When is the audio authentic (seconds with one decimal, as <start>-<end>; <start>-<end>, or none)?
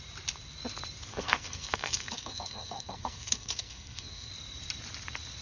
0.0-1.1; 4.3-5.4